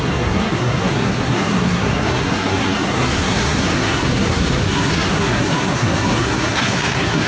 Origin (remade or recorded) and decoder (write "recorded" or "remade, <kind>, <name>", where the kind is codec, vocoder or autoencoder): remade, codec, SNAC